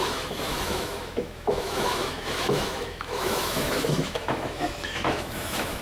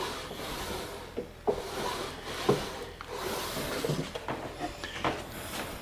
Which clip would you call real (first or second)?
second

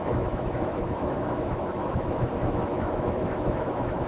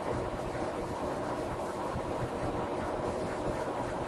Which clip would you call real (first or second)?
second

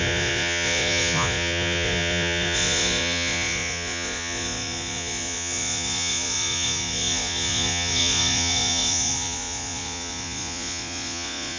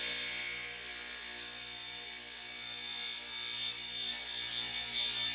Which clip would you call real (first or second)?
second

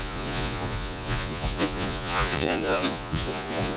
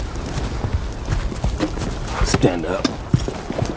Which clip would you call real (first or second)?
second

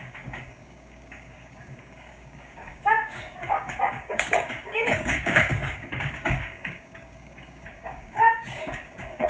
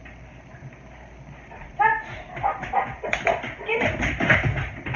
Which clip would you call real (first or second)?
second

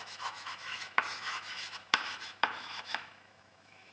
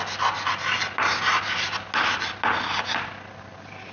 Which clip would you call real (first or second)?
second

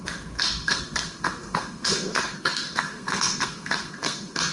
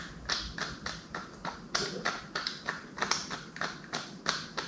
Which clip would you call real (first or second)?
second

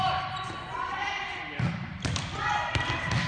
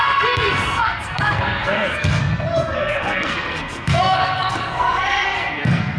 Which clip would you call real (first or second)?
first